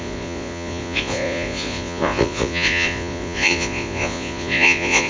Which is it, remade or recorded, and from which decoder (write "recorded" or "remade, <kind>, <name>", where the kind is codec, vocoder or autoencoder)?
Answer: remade, vocoder, Vocos